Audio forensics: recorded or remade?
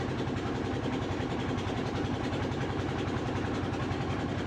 recorded